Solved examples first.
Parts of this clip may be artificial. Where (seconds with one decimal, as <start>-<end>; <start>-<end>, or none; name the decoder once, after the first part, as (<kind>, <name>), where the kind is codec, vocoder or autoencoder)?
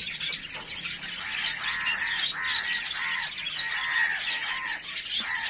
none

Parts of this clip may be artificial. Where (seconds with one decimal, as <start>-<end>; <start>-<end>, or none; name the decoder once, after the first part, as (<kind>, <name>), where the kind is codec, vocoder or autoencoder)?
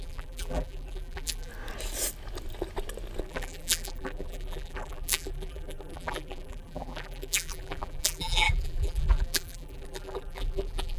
0.0-1.5 (vocoder, BigVGAN v2); 3.2-11.0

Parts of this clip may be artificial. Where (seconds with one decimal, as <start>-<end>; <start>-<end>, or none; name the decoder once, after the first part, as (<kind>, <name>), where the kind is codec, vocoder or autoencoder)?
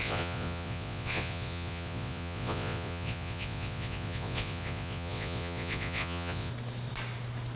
0.0-6.5 (vocoder, Vocos)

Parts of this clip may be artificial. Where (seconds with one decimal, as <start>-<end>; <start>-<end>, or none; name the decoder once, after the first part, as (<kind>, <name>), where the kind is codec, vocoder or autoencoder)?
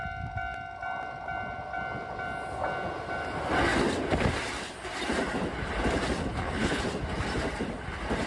6.2-6.8 (codec, HILCodec)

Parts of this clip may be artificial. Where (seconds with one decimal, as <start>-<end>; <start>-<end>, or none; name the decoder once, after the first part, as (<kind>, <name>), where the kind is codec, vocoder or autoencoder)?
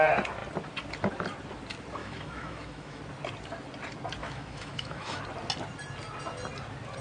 2.0-3.0 (autoencoder, DAC-VAE); 4.2-5.2